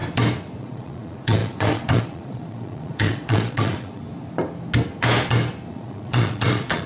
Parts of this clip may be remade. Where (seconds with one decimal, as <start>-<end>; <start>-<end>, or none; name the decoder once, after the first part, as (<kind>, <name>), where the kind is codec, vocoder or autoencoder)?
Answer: 0.6-4.0 (vocoder, Vocos); 5.7-6.9